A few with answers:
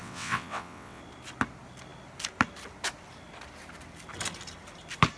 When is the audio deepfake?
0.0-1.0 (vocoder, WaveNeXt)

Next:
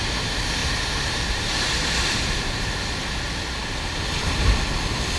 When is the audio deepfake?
0.6-2.6 (vocoder, BigVGAN v2)

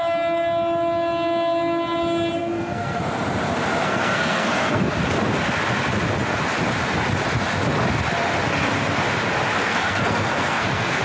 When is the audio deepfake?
2.4-3.0 (codec, SNAC); 3.8-4.9; 9.6-11.0

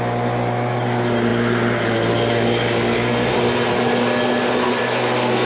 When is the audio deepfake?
none

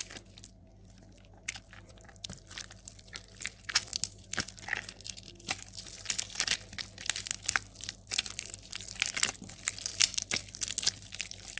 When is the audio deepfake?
0.6-3.9 (vocoder, BigVGAN v2); 7.8-9.9

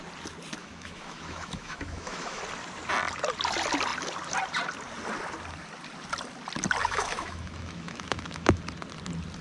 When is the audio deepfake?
0.6-2.4 (autoencoder, DAC-VAE); 6.8-8.6